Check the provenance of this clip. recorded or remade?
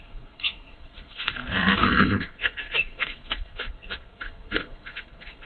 remade